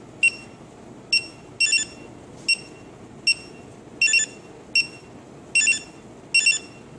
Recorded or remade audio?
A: recorded